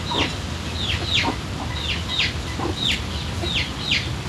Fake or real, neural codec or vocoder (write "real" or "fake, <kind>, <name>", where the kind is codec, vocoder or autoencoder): real